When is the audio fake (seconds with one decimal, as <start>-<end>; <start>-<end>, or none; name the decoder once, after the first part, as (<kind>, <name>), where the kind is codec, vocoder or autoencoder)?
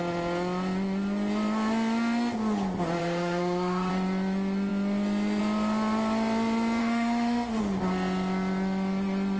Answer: 3.0-3.9 (autoencoder, DAC-VAE); 6.8-7.6